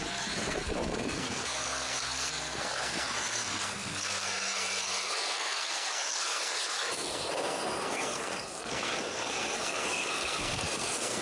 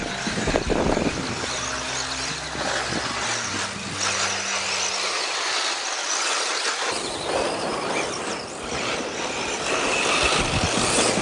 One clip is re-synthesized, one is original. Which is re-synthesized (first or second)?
first